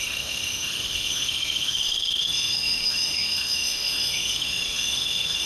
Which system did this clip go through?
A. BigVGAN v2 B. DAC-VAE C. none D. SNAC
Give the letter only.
B